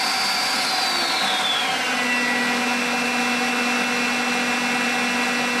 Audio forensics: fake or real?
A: real